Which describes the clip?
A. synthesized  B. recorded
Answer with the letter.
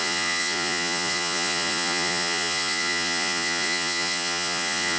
A